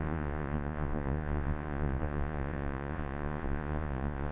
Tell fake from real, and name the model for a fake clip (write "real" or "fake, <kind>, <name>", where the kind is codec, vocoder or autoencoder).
fake, vocoder, Vocos